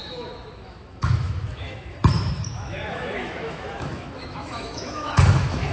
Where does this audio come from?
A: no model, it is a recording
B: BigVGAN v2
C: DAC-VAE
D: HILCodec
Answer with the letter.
C